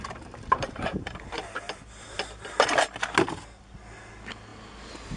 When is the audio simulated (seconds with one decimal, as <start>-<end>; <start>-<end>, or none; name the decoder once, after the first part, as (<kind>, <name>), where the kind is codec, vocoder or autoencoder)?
0.0-1.5 (vocoder, BigVGAN v2)